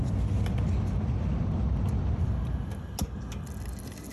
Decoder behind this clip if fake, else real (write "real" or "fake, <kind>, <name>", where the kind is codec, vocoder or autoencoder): real